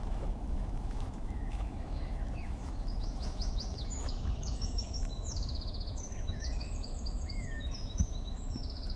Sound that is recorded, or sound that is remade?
remade